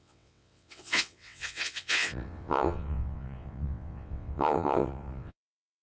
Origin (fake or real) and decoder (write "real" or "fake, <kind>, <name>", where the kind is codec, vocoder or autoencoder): fake, vocoder, WaveNeXt